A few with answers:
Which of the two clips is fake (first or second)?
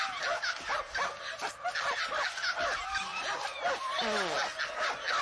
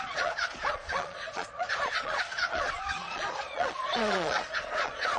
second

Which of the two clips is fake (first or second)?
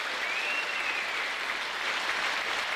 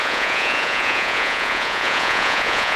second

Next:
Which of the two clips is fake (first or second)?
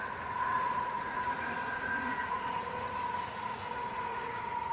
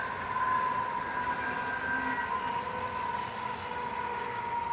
first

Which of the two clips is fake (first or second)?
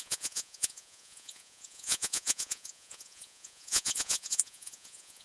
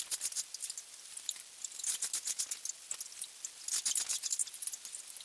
first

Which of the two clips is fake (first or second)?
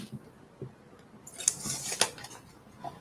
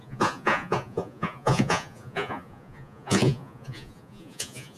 second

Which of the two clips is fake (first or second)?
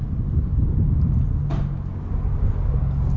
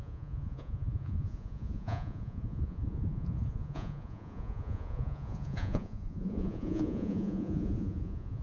second